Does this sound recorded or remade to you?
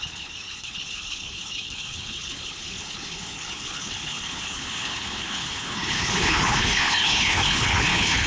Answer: remade